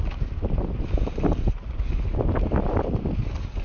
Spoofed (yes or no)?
no